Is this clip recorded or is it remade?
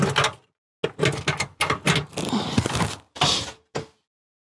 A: recorded